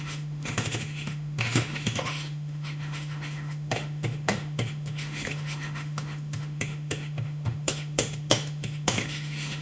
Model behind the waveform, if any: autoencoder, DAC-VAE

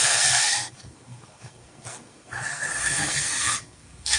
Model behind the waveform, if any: codec, SNAC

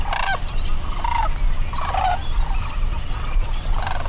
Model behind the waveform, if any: none